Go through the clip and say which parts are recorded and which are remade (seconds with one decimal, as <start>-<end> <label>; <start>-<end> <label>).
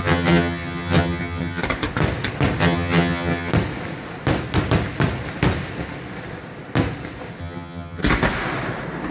0.0-1.6 remade; 1.6-2.6 recorded; 2.6-3.5 remade; 3.5-7.4 recorded; 7.4-8.0 remade; 8.0-9.1 recorded